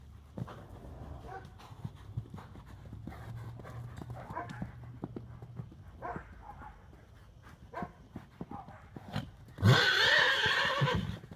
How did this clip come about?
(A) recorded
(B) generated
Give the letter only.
A